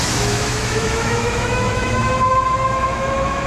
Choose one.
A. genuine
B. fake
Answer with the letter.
B